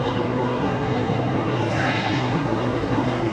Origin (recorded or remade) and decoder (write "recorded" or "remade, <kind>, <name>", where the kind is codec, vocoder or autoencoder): remade, codec, SNAC